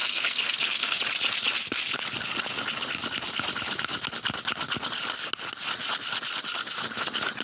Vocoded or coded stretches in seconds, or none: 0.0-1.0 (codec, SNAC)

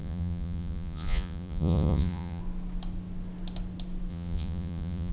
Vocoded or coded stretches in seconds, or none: 0.0-2.4 (vocoder, Vocos); 4.1-5.1

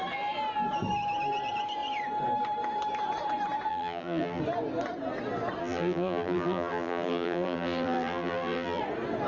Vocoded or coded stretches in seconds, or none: 3.7-4.4 (vocoder, BigVGAN v2); 5.6-8.8

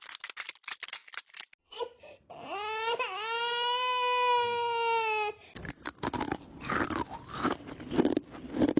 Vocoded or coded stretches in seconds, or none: 1.6-2.2 (vocoder, HiFi-GAN)

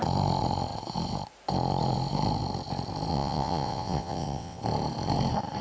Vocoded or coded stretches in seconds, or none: 3.1-4.6 (vocoder, WaveNeXt)